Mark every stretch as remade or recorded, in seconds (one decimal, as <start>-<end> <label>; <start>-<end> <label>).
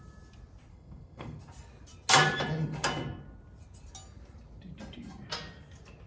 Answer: 0.0-0.7 recorded; 0.7-1.4 remade; 1.4-6.1 recorded